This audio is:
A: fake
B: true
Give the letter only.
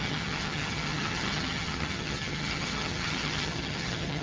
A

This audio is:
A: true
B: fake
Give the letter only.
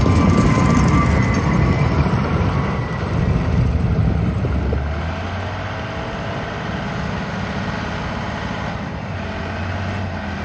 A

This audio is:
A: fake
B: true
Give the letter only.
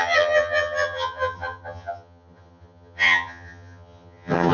A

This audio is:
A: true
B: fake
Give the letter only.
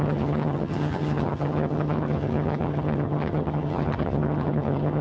B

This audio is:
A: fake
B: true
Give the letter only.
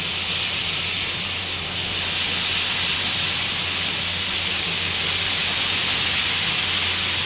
B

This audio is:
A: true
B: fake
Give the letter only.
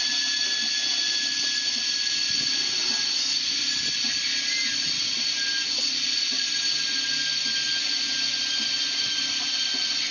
A